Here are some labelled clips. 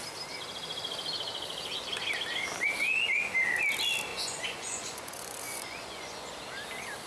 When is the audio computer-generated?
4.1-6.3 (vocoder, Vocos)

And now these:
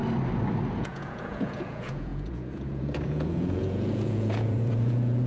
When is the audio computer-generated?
0.8-5.3 (vocoder, Vocos)